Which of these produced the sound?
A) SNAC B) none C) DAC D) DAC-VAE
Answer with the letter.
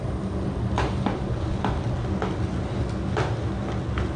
B